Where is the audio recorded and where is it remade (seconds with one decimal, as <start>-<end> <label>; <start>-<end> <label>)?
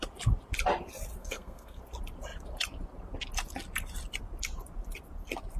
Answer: 0.0-1.2 recorded; 1.2-1.8 remade; 1.8-5.6 recorded